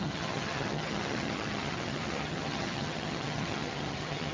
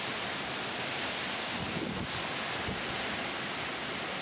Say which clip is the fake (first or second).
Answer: first